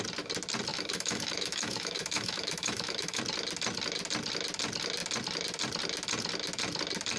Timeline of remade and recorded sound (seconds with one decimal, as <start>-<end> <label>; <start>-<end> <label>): 0.0-0.7 recorded; 0.7-3.2 remade; 3.2-7.2 recorded